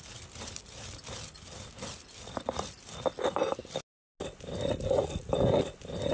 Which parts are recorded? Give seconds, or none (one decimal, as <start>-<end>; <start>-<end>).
0.0-6.1